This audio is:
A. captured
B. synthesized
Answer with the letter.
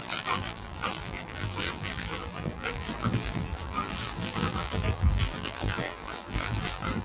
B